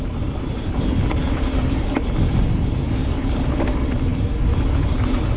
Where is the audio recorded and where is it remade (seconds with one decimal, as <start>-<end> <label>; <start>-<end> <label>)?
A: 0.0-5.4 recorded